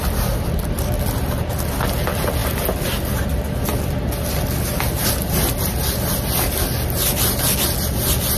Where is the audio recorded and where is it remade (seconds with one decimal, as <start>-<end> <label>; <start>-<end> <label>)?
0.0-8.4 recorded